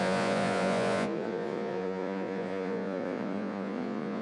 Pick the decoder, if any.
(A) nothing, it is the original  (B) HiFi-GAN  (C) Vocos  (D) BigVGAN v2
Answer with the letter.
C